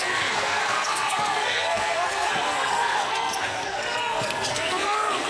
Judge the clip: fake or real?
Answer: fake